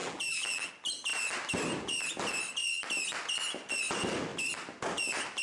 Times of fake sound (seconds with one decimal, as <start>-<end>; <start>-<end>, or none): 0.0-0.7